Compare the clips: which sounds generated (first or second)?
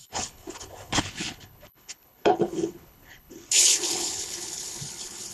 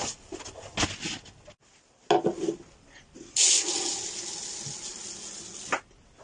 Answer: first